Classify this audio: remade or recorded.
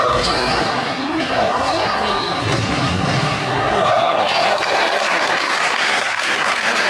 remade